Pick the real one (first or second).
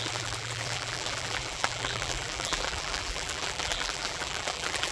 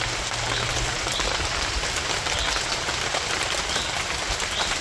second